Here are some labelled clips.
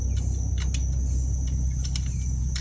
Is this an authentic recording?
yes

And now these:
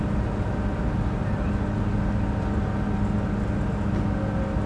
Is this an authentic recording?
yes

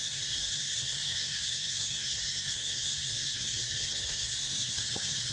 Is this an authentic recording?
no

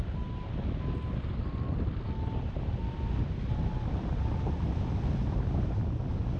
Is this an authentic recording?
yes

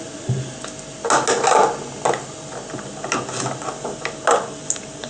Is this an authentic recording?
yes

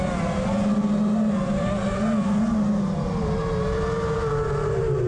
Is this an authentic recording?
yes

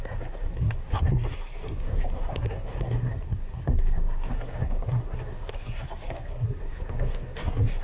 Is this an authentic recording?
no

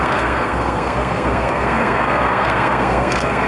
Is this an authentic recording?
no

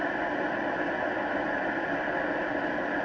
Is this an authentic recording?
yes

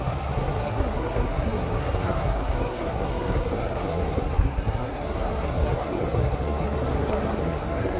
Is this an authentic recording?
no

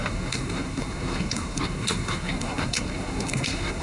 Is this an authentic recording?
no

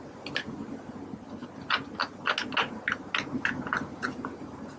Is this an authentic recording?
yes